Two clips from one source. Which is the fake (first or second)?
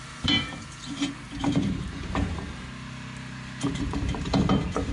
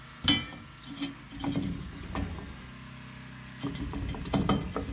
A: first